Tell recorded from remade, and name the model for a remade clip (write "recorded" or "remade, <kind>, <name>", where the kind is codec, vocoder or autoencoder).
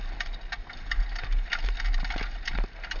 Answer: recorded